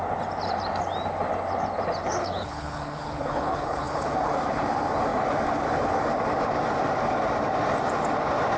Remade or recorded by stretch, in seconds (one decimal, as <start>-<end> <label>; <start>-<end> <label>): 0.0-2.0 recorded; 2.0-4.3 remade; 4.3-8.6 recorded